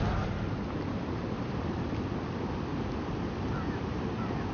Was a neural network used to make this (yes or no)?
no